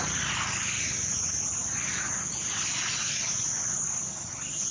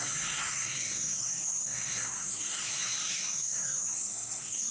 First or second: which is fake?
second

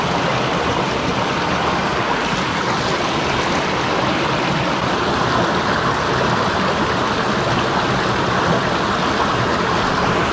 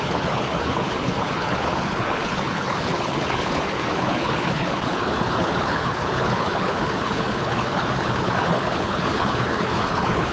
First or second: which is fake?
second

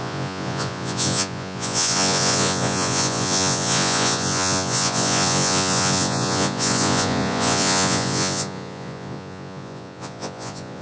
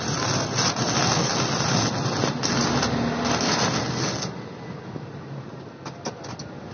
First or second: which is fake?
first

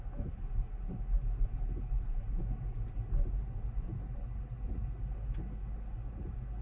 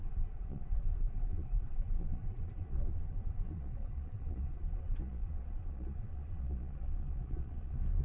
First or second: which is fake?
second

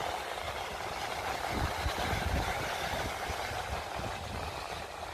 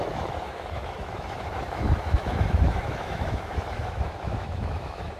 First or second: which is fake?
second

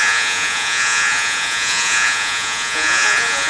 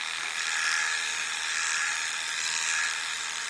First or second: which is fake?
first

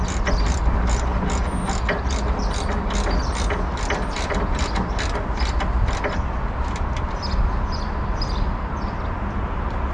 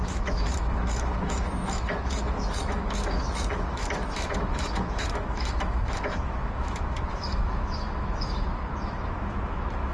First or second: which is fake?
second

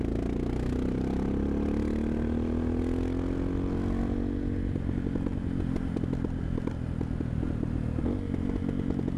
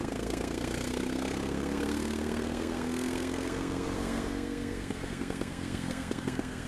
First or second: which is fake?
second